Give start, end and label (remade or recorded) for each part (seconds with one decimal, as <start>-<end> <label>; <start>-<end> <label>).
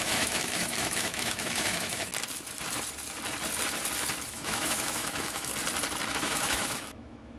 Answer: 0.0-2.1 remade; 2.1-4.3 recorded; 4.3-5.5 remade; 5.5-6.1 recorded; 6.1-7.4 remade